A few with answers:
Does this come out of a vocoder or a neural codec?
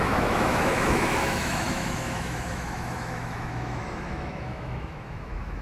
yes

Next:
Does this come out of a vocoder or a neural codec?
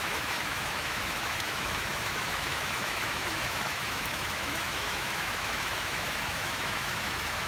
yes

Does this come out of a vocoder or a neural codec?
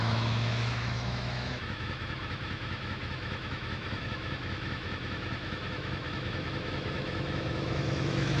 yes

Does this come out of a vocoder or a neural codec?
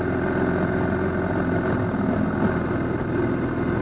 no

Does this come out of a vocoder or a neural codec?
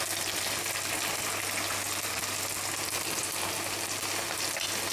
no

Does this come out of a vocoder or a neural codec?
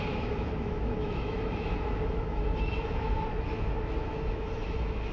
yes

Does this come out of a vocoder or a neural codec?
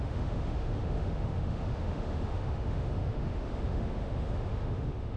yes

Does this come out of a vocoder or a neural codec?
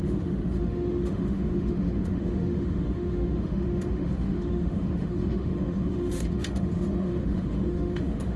yes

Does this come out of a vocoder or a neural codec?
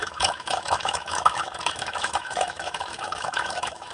yes